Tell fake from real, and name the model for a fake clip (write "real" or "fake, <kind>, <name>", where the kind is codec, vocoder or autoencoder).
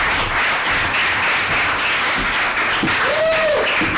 real